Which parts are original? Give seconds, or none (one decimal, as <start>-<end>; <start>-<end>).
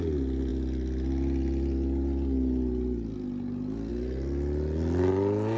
0.0-5.6